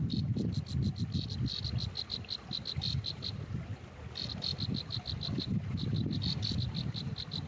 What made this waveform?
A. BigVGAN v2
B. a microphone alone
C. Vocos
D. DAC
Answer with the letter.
B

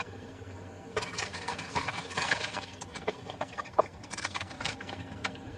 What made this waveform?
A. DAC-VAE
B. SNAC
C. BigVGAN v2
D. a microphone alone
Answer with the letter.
B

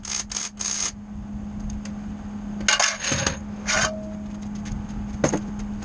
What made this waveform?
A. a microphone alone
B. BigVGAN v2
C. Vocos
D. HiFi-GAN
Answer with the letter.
A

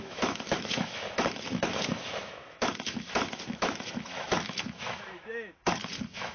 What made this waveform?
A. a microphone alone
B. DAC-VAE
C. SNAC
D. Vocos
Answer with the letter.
B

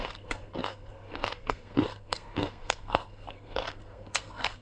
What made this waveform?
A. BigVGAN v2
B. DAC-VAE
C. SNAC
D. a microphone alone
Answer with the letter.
C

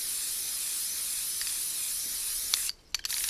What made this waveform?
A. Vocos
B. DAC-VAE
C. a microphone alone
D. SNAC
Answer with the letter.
C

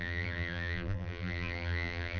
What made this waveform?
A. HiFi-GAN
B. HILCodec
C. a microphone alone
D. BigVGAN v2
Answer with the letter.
D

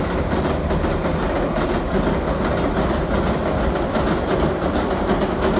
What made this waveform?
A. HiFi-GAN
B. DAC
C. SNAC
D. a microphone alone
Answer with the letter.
D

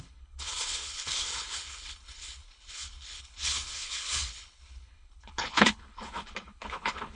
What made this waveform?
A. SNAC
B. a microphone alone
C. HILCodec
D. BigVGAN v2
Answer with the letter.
C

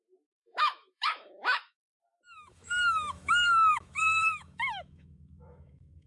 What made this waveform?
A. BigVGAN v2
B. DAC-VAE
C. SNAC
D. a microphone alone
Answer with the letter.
B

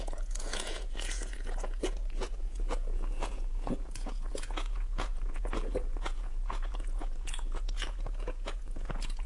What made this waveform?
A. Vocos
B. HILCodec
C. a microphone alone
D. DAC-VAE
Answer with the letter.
A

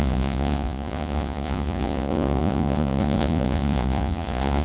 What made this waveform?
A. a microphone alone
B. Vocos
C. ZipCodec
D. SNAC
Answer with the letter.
B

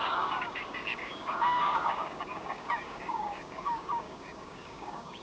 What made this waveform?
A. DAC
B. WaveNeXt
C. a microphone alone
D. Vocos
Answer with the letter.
A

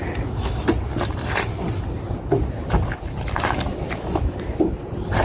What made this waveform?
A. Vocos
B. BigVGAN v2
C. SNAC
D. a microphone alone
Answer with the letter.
D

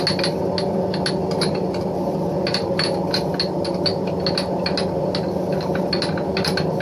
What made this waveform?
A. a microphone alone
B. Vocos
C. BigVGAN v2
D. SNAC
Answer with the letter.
A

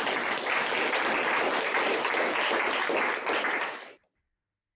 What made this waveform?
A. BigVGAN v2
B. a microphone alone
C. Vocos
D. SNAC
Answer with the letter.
B